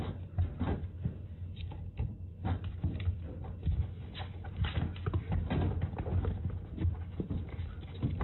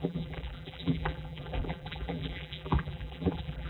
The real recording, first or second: first